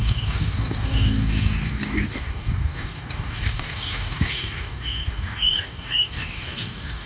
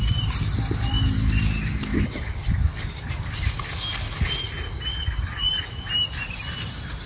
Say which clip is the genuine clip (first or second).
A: second